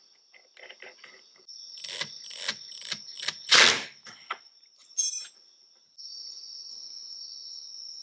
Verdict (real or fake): real